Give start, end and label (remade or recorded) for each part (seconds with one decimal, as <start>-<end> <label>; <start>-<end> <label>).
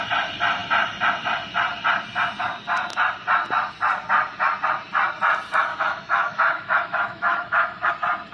0.0-5.7 recorded; 5.7-7.9 remade; 7.9-8.3 recorded